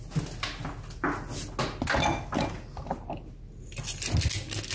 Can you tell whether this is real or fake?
real